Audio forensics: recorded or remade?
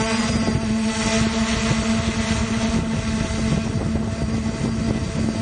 recorded